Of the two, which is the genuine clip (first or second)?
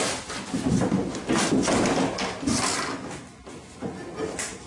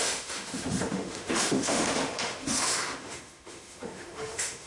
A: first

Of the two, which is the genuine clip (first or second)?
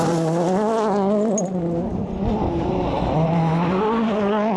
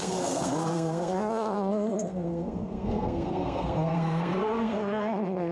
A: first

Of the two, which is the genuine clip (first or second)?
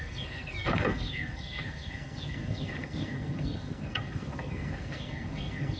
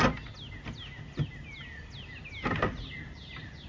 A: second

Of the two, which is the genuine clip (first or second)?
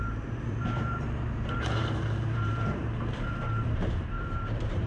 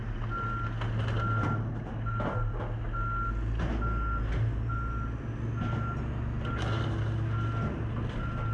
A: second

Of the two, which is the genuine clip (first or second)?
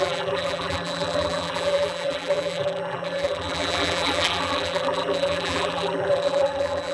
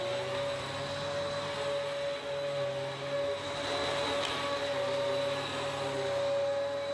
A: second